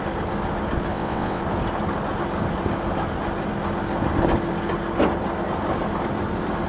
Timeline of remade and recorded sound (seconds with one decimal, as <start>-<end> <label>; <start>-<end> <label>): 0.0-0.9 recorded; 0.9-1.4 remade; 1.4-6.7 recorded